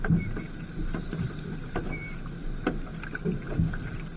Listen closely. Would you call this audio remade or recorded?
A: recorded